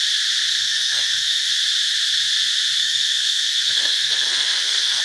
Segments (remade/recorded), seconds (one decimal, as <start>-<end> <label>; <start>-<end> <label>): 0.0-0.5 recorded; 0.5-1.5 remade; 1.5-2.8 recorded; 2.8-5.0 remade